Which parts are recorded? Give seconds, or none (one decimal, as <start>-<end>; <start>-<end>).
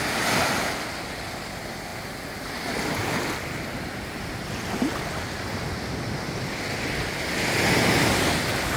0.0-8.8